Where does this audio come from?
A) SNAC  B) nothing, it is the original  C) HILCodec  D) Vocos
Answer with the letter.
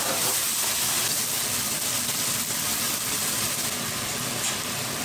B